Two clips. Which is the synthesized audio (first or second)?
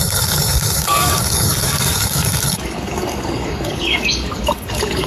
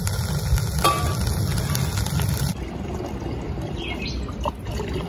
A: first